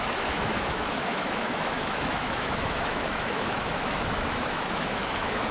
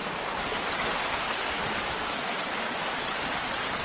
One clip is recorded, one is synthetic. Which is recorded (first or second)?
second